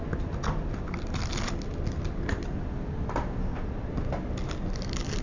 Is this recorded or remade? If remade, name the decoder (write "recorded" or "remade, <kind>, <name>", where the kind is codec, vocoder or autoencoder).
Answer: recorded